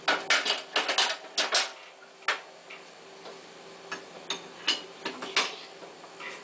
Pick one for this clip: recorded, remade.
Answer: recorded